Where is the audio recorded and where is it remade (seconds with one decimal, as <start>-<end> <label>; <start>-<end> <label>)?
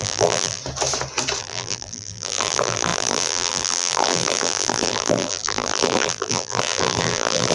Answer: 0.0-0.6 remade; 0.6-1.4 recorded; 1.4-7.5 remade